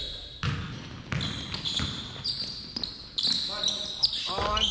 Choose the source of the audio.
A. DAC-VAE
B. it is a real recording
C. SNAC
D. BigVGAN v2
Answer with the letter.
B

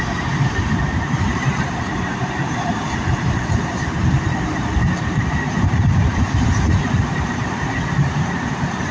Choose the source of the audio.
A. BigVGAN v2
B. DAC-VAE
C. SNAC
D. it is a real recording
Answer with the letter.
A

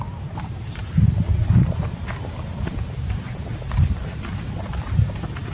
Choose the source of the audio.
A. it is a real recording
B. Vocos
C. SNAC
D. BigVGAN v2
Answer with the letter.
D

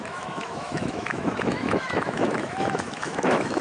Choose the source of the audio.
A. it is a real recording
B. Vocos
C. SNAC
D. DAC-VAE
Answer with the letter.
D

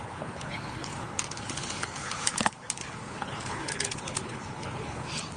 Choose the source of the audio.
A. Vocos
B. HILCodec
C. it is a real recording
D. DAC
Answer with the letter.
B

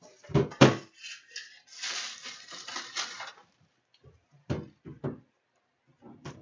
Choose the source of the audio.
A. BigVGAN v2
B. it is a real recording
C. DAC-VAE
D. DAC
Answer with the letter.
A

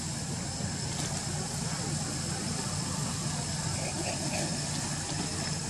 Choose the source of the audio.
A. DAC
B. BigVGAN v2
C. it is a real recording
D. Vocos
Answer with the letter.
C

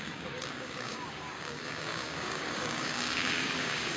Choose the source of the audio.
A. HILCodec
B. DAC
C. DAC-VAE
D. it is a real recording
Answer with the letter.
B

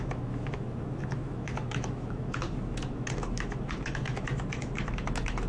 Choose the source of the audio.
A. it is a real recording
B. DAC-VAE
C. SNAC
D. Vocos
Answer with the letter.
B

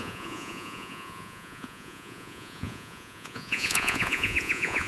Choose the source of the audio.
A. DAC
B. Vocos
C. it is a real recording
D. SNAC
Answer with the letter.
B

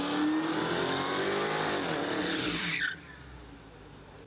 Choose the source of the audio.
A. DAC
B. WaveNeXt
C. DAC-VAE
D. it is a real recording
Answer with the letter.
D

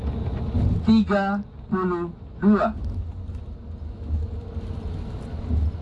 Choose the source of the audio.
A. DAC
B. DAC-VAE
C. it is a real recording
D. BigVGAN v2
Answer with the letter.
C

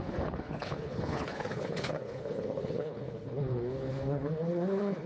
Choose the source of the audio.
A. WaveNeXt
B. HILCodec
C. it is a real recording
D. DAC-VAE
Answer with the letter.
B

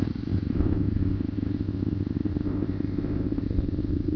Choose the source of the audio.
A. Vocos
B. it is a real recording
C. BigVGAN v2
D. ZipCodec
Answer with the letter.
D